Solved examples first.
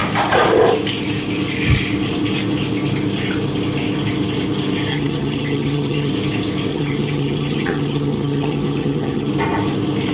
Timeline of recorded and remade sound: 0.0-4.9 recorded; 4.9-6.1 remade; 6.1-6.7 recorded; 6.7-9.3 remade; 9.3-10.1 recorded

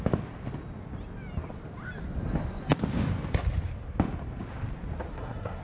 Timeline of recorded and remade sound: 0.0-5.1 recorded; 5.1-5.6 remade

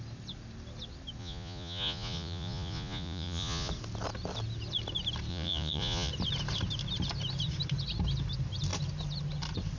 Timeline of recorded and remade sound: 0.0-1.2 recorded; 1.2-3.7 remade; 3.7-5.3 recorded; 5.3-6.1 remade; 6.1-9.8 recorded

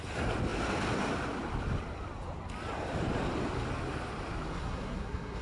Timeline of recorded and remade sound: 0.0-4.5 recorded; 4.5-5.4 remade

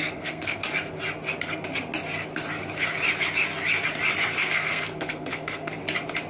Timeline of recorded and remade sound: 0.0-0.6 remade; 0.6-4.4 recorded; 4.4-5.8 remade; 5.8-6.3 recorded

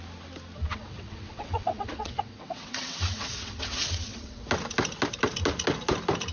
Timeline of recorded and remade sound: 0.0-0.6 recorded; 0.6-4.4 remade; 4.4-6.3 recorded